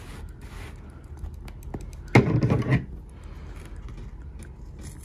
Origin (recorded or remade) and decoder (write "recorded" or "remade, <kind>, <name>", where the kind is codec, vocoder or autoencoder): recorded